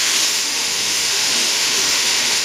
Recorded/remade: remade